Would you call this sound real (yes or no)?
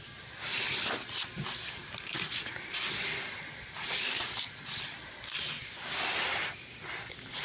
yes